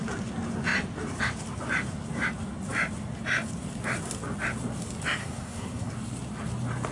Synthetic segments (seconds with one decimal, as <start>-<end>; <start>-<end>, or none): 5.2-5.9

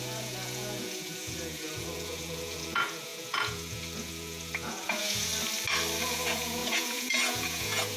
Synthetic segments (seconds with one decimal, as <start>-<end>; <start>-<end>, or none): 0.0-5.3; 6.0-8.0

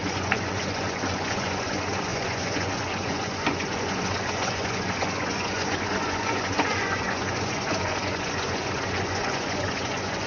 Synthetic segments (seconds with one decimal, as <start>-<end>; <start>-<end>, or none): 0.0-10.3

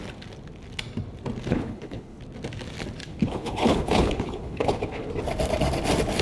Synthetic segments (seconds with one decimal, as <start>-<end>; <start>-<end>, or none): 1.5-2.2; 3.0-5.1

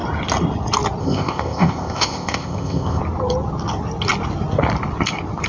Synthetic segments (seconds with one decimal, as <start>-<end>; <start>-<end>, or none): 1.0-3.0